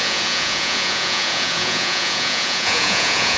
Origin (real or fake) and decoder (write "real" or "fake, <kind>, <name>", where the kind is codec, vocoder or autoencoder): fake, vocoder, Vocos